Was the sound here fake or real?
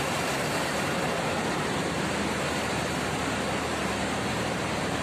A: fake